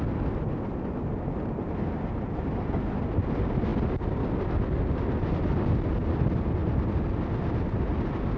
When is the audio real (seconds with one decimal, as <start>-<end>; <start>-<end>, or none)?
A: 0.0-8.4